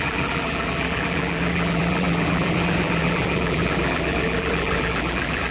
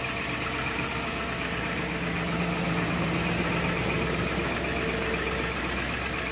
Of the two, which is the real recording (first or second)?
second